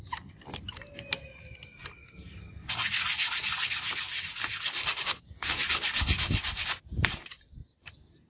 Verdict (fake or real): real